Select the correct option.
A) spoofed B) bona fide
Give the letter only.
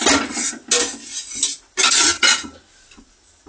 B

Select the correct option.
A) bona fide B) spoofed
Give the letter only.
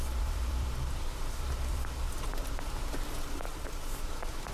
B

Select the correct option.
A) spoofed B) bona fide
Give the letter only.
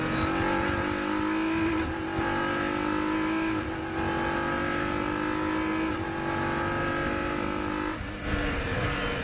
B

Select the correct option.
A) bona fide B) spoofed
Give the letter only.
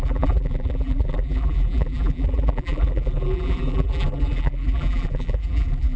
B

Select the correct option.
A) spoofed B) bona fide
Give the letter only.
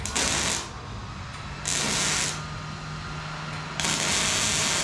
B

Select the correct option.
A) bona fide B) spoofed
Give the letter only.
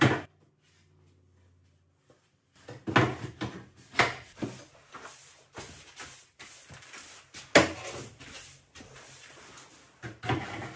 A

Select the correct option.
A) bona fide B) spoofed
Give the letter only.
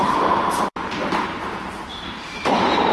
B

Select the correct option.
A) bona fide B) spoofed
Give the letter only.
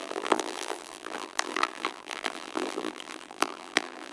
B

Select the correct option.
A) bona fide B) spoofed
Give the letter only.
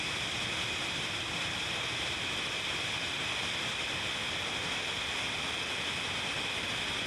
A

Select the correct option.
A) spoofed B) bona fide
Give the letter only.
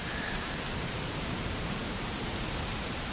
A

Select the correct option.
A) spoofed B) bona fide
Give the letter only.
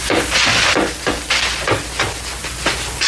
B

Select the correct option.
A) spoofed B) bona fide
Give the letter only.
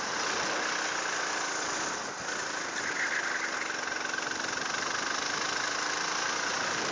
B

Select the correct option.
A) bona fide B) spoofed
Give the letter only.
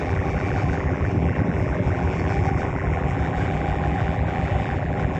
B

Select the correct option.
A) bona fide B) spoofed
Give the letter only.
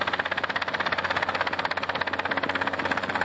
A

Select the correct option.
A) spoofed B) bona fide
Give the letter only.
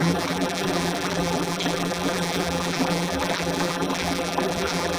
A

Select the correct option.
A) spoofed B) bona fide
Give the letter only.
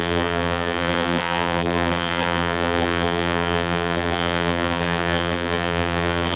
A